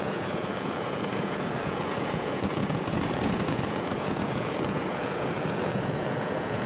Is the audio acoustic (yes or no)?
no